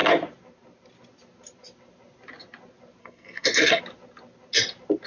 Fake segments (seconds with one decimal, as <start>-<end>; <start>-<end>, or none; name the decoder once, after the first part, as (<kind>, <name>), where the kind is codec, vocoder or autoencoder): 3.0-3.8 (codec, SNAC)